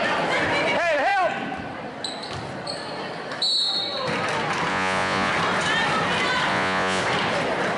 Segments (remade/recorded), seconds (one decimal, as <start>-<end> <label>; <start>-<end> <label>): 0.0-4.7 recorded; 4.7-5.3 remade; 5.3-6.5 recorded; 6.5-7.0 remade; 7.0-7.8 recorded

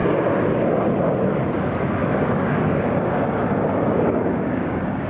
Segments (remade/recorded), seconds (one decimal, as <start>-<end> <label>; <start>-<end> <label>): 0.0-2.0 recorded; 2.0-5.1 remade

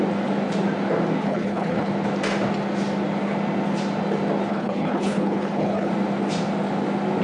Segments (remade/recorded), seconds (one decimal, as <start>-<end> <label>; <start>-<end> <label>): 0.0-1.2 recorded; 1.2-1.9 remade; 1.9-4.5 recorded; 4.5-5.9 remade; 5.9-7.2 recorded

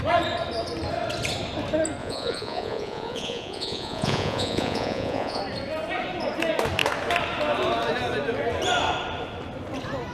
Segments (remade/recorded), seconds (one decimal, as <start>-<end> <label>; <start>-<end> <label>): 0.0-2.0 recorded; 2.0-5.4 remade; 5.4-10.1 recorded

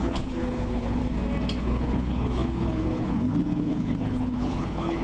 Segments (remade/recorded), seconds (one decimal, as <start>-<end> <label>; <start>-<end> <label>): 0.0-1.0 remade; 1.0-1.6 recorded; 1.6-5.0 remade

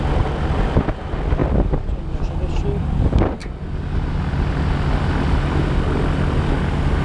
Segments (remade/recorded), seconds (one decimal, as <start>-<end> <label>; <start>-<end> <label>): 0.0-1.4 recorded; 1.4-1.9 remade; 1.9-7.0 recorded

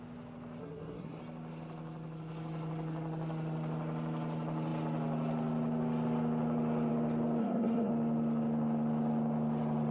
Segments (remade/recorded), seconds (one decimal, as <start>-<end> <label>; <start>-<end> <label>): 0.0-0.6 recorded; 0.6-1.2 remade; 1.2-7.4 recorded; 7.4-7.9 remade; 7.9-9.9 recorded

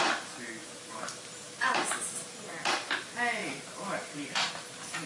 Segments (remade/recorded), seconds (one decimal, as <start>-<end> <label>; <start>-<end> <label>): 0.0-0.6 recorded; 0.6-1.8 remade; 1.8-3.4 recorded; 3.4-4.5 remade; 4.5-5.1 recorded